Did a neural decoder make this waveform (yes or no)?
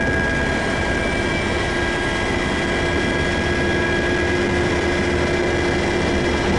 no